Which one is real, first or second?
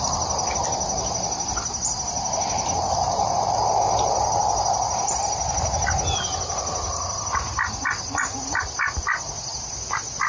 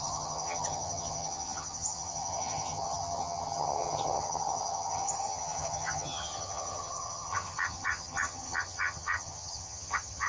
first